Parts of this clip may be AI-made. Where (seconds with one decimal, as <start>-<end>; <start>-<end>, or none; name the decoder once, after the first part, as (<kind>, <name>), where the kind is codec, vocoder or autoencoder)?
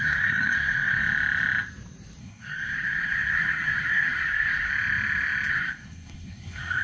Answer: 0.0-1.0 (codec, SNAC); 2.2-4.7; 5.5-6.8